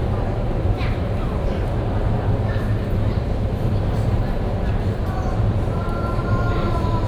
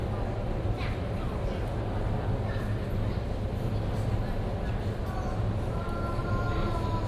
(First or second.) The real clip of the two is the second